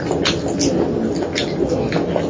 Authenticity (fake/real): real